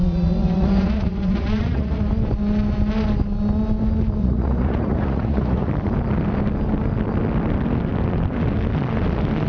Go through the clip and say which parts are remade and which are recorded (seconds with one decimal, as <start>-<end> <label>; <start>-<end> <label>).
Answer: 0.0-2.0 remade; 2.0-4.2 recorded; 4.2-5.7 remade; 5.7-9.5 recorded